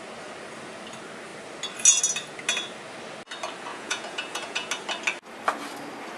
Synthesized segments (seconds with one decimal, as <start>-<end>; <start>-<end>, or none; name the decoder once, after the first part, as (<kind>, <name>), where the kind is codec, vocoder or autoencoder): 3.7-4.7 (vocoder, Vocos)